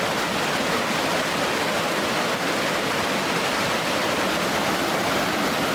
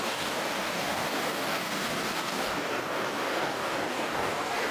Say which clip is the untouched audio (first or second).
first